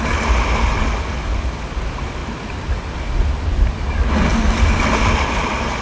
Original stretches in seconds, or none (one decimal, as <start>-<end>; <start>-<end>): 0.0-5.8